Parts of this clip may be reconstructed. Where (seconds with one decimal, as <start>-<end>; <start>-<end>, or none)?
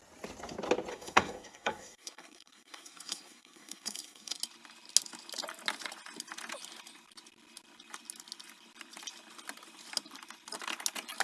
0.9-4.4